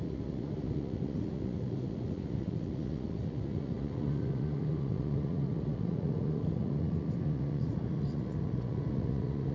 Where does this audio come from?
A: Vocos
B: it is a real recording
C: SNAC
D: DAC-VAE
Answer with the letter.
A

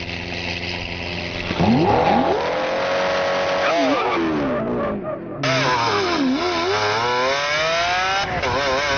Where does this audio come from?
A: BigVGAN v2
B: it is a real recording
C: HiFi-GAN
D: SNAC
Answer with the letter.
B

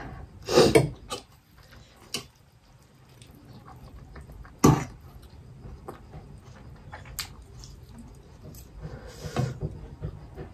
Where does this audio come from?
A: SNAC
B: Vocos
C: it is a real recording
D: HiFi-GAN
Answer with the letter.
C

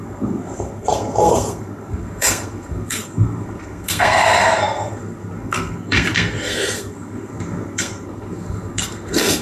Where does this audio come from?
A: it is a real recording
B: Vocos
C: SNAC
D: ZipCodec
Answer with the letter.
C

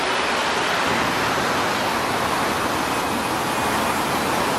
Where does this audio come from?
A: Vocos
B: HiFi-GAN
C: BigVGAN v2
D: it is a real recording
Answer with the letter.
D